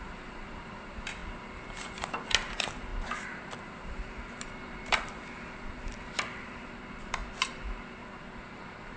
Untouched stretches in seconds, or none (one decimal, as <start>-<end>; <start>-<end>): 1.2-2.5; 7.2-8.4